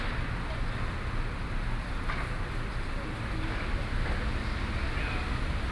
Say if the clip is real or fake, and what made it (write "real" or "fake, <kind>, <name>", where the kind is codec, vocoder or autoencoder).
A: real